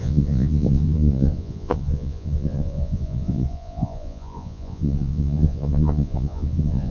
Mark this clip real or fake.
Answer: fake